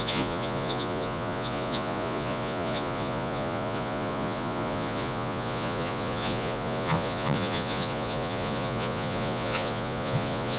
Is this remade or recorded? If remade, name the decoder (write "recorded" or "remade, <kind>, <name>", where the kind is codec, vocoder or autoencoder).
remade, vocoder, Vocos